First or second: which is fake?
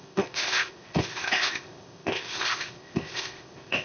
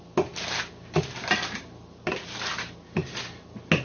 first